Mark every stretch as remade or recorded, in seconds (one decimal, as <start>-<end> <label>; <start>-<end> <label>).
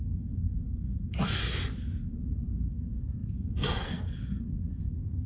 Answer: 0.0-1.4 remade; 1.4-2.7 recorded; 2.7-5.3 remade